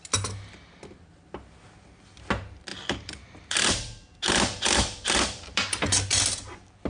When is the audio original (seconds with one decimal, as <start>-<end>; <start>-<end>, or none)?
0.0-2.7